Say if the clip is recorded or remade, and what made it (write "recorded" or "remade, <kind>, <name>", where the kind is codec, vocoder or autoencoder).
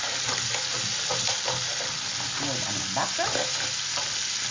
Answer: recorded